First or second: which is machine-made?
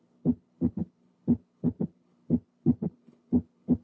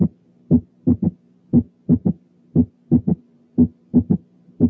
first